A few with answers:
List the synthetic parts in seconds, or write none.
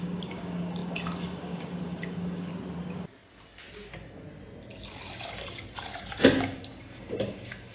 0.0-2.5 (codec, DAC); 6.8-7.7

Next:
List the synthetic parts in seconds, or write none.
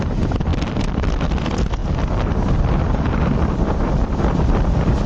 0.0-5.1 (vocoder, BigVGAN v2)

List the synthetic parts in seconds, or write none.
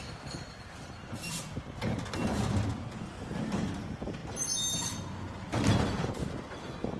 none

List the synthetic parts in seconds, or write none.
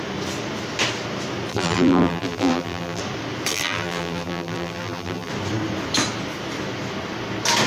1.5-3.0 (vocoder, BigVGAN v2); 3.5-5.3